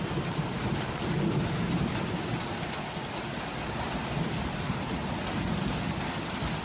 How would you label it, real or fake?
real